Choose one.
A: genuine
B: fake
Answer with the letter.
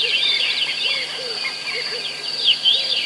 B